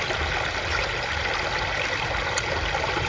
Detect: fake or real real